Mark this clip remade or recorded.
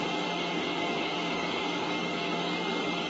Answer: remade